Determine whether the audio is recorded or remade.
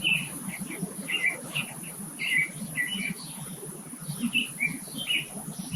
recorded